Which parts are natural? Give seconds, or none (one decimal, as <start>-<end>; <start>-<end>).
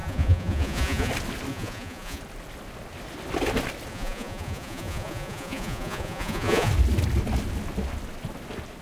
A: 1.1-1.5; 2.2-3.9; 6.7-8.8